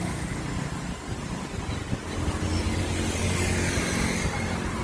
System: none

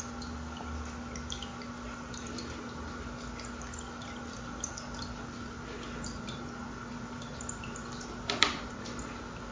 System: none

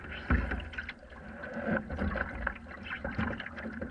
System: none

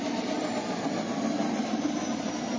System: vocoder, BigVGAN v2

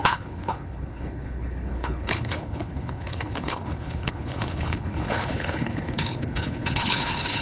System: codec, HILCodec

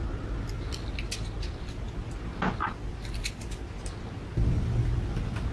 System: none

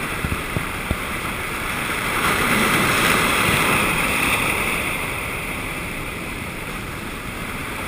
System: vocoder, BigVGAN v2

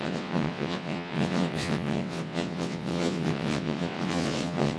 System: vocoder, WaveNeXt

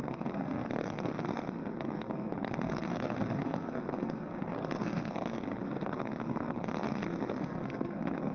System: codec, SNAC